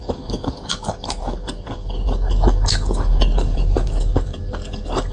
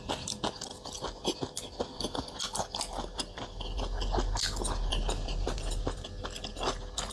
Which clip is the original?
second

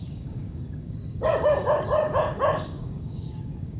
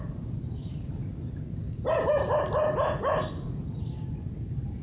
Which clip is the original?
second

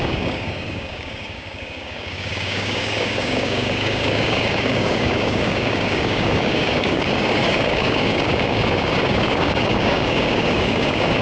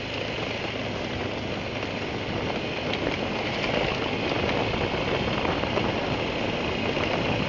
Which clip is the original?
second